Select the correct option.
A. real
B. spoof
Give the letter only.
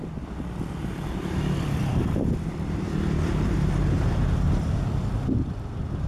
B